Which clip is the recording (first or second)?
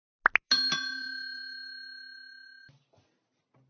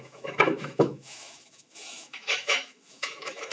first